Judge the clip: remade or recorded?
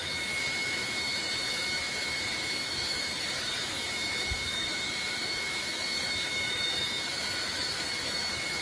remade